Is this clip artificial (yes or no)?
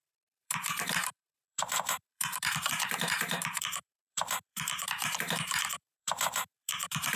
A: yes